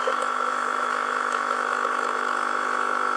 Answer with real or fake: fake